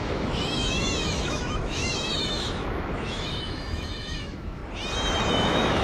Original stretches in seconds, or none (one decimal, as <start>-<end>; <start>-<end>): 4.6-5.3